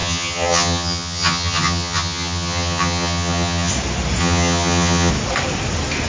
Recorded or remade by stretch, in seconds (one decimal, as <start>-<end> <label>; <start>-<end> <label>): 0.0-3.7 remade; 3.7-4.2 recorded; 4.2-5.1 remade; 5.1-6.1 recorded